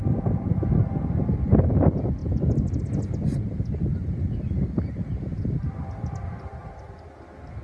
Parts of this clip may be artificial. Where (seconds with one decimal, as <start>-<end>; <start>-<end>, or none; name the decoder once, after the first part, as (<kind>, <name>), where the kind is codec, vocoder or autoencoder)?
none